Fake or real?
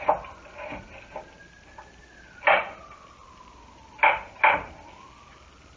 real